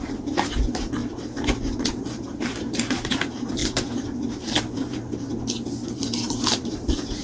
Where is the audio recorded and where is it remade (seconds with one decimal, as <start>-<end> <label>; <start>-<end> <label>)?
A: 0.0-1.0 remade; 1.0-1.9 recorded; 1.9-3.6 remade; 3.6-6.5 recorded; 6.5-7.2 remade